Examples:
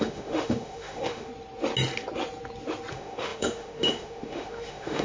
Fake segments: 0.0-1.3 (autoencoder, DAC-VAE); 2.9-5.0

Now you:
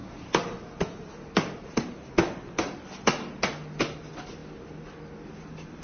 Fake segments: none

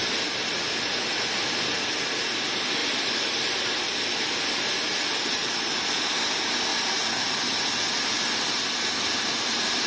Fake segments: 2.8-4.7 (vocoder, BigVGAN v2)

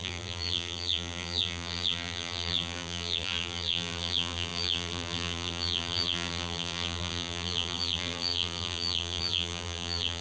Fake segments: 0.0-10.2 (vocoder, BigVGAN v2)

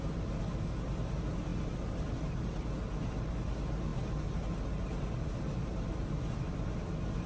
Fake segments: none

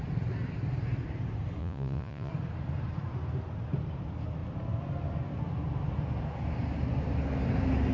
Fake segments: 1.6-2.3 (vocoder, Vocos)